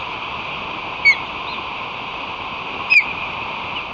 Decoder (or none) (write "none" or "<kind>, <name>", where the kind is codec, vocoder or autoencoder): none